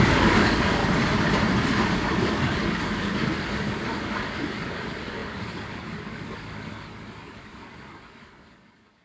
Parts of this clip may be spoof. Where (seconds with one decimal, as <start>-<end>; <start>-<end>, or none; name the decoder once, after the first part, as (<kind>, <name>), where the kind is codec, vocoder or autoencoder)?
0.0-0.8 (codec, DAC); 1.9-9.0